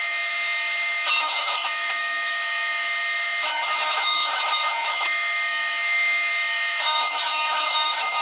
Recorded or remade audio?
remade